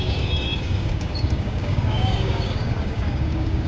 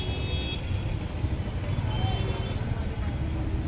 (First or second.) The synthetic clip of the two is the first